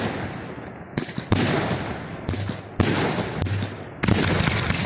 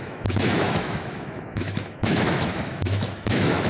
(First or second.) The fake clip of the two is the second